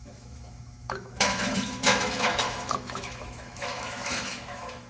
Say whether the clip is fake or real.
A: fake